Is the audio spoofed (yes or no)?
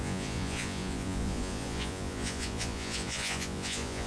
yes